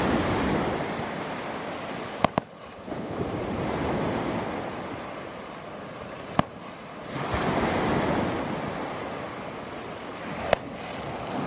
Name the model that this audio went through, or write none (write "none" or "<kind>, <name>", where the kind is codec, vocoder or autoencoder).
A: none